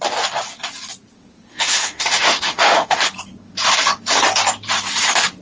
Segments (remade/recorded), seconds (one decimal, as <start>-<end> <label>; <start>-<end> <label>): 0.0-1.5 recorded; 1.5-3.0 remade; 3.0-5.4 recorded